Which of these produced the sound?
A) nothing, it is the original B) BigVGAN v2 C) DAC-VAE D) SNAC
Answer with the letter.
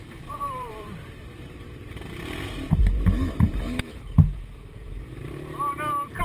B